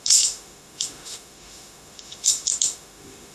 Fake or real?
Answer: fake